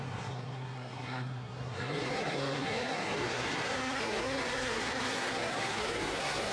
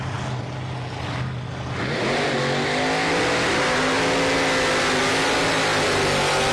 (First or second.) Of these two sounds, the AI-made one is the first